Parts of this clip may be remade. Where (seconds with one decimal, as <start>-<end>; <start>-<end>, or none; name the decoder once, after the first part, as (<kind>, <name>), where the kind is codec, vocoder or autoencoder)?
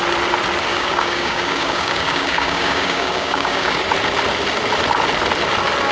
0.7-3.8 (codec, DAC)